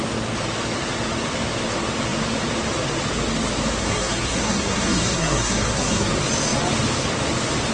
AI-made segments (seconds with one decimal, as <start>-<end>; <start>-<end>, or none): 3.8-6.1